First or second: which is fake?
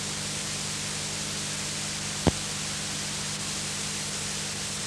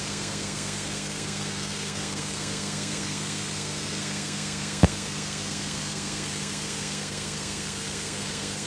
second